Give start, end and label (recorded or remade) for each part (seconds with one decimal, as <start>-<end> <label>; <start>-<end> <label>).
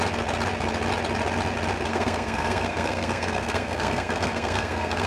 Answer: 0.0-1.9 recorded; 1.9-5.1 remade